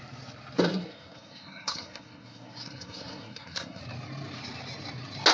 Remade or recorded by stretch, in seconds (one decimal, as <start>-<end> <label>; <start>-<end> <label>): 0.0-0.6 recorded; 0.6-3.8 remade; 3.8-5.3 recorded